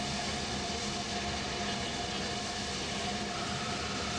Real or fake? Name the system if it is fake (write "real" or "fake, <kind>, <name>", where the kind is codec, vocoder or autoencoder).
real